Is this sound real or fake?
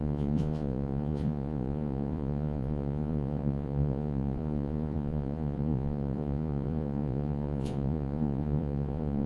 fake